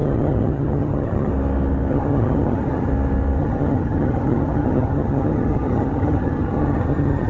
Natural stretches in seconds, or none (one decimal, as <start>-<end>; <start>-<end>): 1.3-1.9; 2.9-3.4